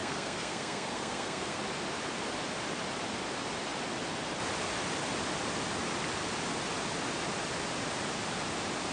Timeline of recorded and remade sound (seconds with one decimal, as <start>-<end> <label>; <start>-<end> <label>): 0.0-1.6 remade; 1.6-8.9 recorded